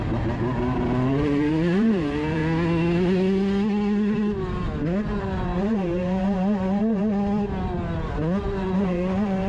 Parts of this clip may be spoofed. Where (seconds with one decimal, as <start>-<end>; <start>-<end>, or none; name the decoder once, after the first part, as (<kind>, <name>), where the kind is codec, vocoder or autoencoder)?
0.0-2.4 (vocoder, BigVGAN v2); 5.2-7.0; 8.4-9.5